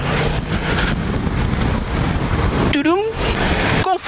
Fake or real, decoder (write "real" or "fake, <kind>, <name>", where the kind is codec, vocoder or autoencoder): real